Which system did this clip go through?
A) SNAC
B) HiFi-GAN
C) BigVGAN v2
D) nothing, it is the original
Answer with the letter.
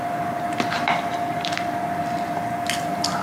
D